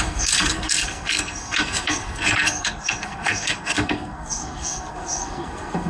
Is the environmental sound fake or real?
fake